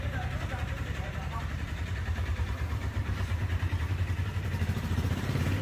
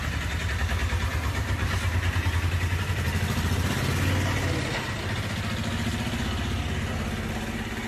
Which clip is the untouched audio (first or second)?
second